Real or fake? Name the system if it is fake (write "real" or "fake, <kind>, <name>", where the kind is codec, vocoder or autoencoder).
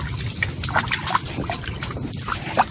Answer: real